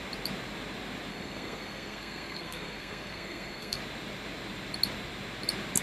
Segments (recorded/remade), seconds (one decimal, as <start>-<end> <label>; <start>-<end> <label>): 0.0-1.1 recorded; 1.1-3.8 remade; 3.8-5.8 recorded